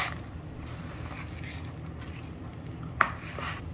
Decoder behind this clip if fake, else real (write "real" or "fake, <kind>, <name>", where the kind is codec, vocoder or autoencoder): real